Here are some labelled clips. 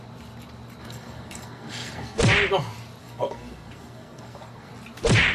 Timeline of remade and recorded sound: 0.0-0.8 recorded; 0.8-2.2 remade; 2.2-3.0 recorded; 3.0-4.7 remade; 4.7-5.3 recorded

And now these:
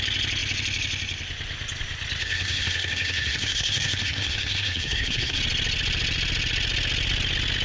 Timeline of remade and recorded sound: 0.0-2.2 recorded; 2.2-5.4 remade; 5.4-7.6 recorded

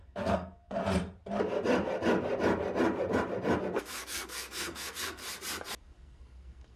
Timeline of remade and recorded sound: 0.0-0.8 remade; 0.8-3.6 recorded; 3.6-5.2 remade; 5.2-5.8 recorded; 5.8-6.8 remade

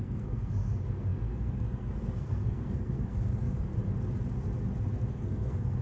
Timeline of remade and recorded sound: 0.0-3.7 remade; 3.7-5.1 recorded; 5.1-5.8 remade